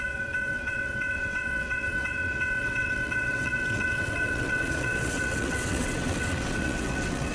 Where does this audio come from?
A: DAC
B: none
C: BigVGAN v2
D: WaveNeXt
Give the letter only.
D